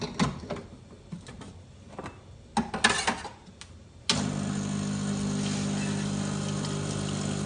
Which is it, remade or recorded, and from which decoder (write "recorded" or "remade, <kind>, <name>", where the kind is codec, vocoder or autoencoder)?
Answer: recorded